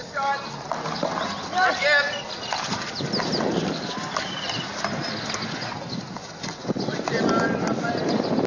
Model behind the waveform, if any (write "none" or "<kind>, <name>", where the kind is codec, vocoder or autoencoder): none